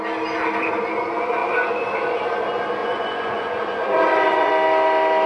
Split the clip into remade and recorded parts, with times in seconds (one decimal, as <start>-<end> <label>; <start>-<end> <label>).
0.0-2.8 recorded; 2.8-4.5 remade; 4.5-5.3 recorded